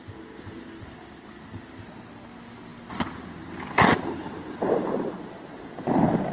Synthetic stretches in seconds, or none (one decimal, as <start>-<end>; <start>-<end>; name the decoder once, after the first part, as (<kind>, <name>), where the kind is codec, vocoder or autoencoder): 2.7-5.2 (vocoder, BigVGAN v2)